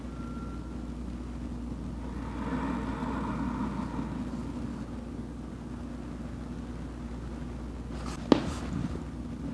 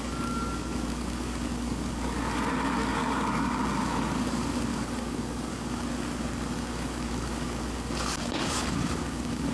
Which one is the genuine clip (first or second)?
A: first